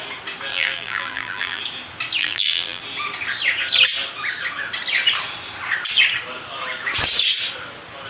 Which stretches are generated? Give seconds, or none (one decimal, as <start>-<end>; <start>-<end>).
0.5-1.6; 2.2-2.8